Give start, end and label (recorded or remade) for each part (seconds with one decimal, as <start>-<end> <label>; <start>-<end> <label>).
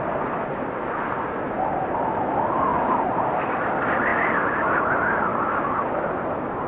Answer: 0.0-6.7 recorded